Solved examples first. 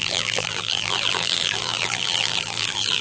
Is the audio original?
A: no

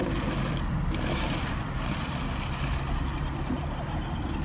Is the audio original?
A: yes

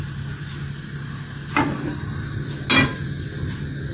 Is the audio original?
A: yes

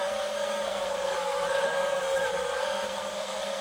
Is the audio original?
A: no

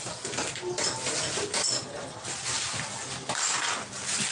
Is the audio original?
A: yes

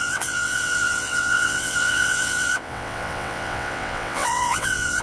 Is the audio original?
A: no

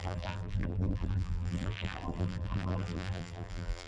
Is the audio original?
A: no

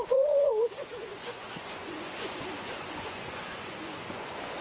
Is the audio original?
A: no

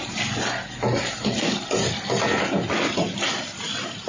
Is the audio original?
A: yes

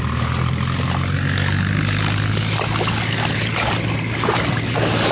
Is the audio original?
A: yes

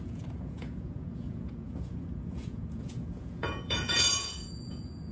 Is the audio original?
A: no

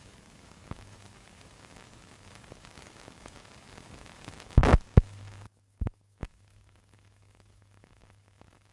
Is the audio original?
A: no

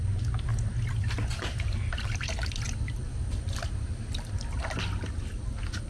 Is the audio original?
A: yes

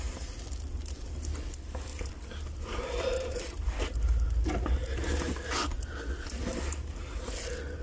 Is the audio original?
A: yes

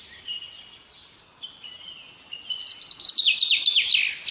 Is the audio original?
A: yes